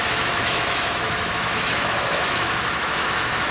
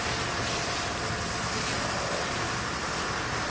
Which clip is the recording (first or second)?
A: second